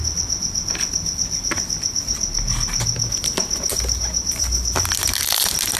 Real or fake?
real